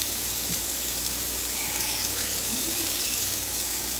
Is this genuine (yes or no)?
no